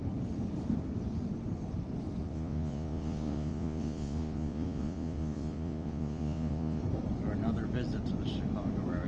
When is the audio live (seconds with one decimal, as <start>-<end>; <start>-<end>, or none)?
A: 0.0-2.2; 6.8-9.1